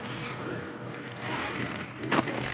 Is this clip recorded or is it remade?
remade